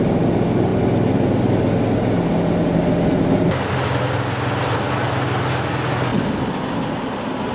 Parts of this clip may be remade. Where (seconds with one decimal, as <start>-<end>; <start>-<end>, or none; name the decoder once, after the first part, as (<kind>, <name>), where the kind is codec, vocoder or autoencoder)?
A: none